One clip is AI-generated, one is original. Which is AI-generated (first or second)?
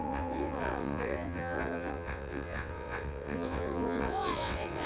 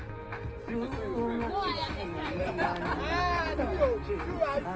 first